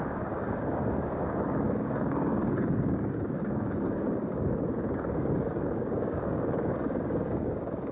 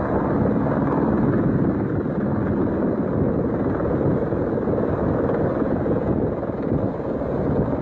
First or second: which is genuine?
second